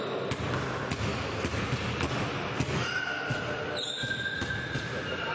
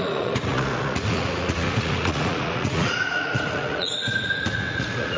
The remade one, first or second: second